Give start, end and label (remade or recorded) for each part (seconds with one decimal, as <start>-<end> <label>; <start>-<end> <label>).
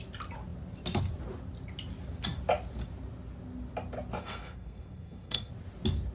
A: 0.0-4.2 recorded; 4.2-5.5 remade; 5.5-6.1 recorded